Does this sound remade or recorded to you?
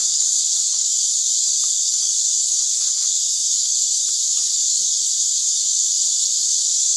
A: remade